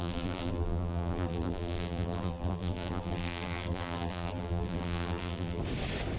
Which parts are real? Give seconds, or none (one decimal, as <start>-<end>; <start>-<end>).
5.6-6.2

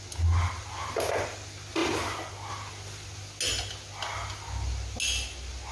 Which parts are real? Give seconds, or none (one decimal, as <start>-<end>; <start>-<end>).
0.0-5.7

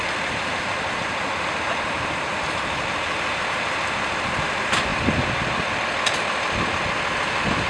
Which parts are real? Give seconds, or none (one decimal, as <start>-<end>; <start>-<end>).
0.0-0.5; 4.2-7.7